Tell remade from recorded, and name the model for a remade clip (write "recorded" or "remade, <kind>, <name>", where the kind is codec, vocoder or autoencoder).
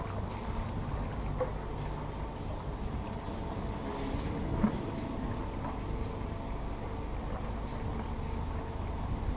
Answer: recorded